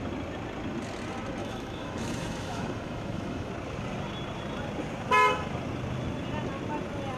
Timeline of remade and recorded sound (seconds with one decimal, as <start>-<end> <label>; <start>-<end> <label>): 0.0-1.4 recorded; 1.4-3.5 remade; 3.5-7.2 recorded